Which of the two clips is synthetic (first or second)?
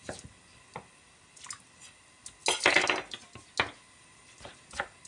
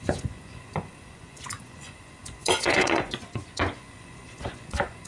second